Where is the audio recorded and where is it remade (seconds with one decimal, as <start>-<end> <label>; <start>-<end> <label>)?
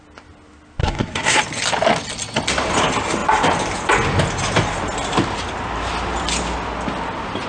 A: 0.0-0.8 recorded; 0.8-1.4 remade; 1.4-7.5 recorded